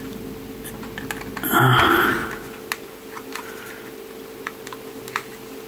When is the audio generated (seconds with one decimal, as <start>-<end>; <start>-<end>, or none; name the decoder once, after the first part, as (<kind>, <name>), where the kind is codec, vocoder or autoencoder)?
none